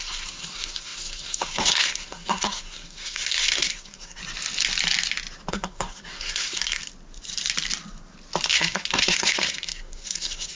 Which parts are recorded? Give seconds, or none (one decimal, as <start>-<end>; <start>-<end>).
4.2-5.5; 6.8-8.5